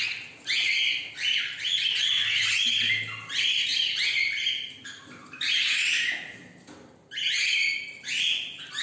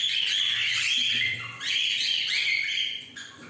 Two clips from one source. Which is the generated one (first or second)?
second